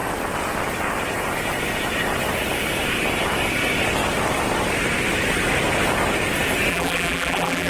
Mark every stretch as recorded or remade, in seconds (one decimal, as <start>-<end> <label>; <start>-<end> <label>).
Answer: 0.0-6.7 recorded; 6.7-7.7 remade